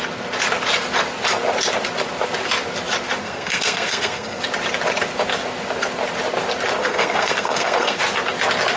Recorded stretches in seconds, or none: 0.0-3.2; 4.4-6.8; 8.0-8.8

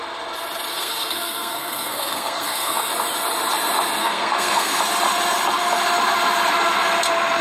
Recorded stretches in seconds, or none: 0.0-0.7; 2.9-4.0; 4.8-7.4

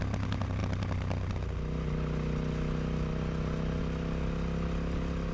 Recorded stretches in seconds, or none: 0.0-5.3

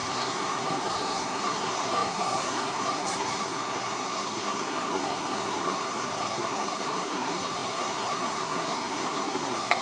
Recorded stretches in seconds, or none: none

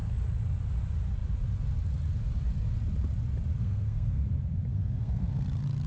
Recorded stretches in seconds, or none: 0.0-3.6; 4.2-4.7; 5.4-5.9

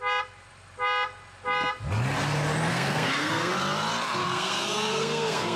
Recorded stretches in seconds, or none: 0.0-2.7; 3.5-4.2

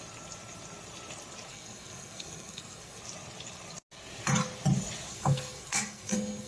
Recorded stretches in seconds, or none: 0.0-1.5; 3.0-5.1

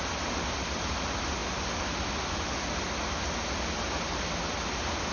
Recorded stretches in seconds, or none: 0.0-5.1